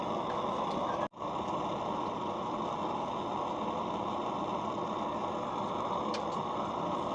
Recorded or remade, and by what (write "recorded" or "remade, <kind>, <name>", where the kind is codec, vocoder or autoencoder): recorded